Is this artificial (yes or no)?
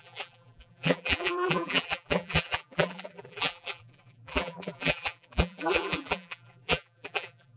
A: yes